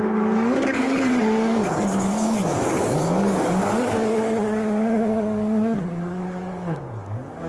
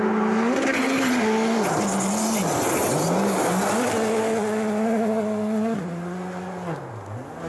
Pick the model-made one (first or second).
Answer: first